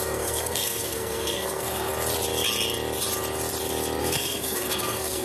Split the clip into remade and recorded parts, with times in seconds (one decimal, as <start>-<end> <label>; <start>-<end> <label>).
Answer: 0.0-1.9 remade; 1.9-4.0 recorded; 4.0-5.2 remade